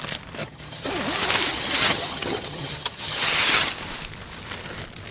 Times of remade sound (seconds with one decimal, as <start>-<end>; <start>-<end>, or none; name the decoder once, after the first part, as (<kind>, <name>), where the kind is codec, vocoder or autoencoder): 0.4-0.9 (vocoder, HiFi-GAN); 1.5-3.7